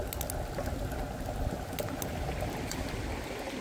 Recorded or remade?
recorded